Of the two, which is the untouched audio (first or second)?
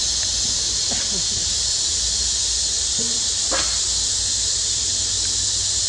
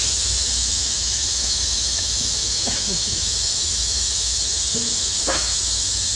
first